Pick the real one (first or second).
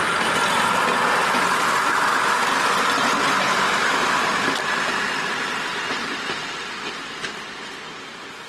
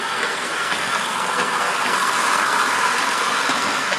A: first